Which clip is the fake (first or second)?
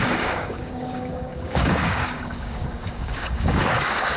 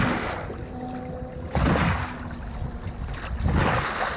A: first